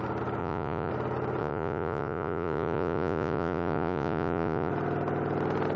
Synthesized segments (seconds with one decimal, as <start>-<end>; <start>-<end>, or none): 0.4-0.9; 1.4-4.7